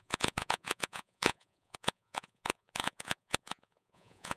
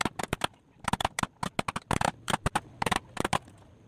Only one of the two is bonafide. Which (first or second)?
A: second